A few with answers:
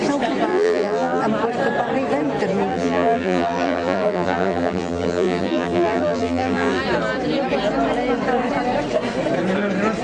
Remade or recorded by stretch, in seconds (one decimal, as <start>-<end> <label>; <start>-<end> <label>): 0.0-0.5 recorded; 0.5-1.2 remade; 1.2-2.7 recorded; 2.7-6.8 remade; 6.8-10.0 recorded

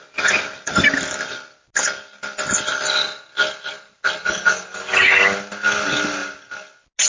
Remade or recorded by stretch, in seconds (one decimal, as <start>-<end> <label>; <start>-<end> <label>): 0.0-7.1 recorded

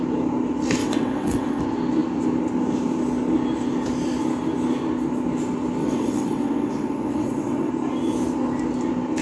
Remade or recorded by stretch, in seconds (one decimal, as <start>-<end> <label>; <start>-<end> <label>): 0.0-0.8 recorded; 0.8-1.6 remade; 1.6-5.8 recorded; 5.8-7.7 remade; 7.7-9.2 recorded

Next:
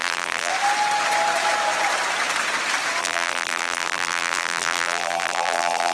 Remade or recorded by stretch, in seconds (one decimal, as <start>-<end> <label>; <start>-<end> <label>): 0.0-0.5 remade; 0.5-3.0 recorded; 3.0-5.9 remade